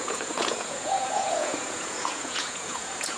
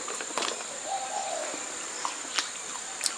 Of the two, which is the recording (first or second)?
second